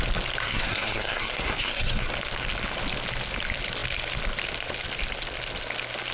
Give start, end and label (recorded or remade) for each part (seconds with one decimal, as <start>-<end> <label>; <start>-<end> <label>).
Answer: 0.0-0.4 recorded; 0.4-2.1 remade; 2.1-6.1 recorded